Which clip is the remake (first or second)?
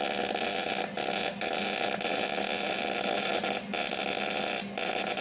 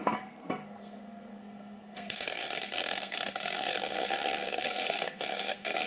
second